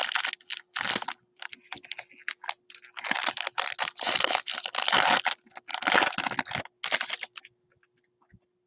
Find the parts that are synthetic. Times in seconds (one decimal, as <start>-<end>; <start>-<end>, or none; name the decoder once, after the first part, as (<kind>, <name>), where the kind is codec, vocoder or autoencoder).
none

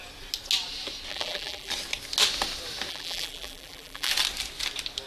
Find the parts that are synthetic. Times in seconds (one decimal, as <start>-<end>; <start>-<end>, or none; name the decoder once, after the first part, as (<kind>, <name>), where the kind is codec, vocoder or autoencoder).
1.1-1.7 (vocoder, BigVGAN v2); 2.9-4.1

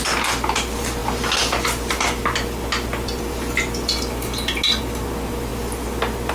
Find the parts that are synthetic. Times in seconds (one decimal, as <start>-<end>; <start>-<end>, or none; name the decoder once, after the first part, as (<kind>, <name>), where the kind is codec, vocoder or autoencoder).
none